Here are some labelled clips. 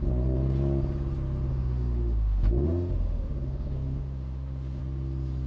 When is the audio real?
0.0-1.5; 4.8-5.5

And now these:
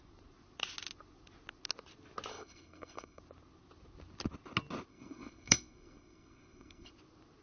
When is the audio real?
0.0-2.3; 3.2-4.9; 6.9-7.4

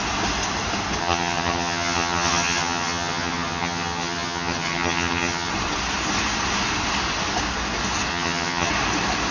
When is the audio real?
0.0-1.0; 5.5-8.1; 8.7-9.3

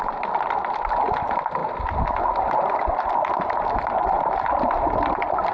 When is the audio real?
0.0-5.5

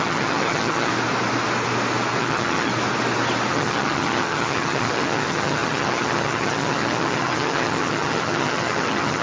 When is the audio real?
0.9-2.2; 2.7-3.5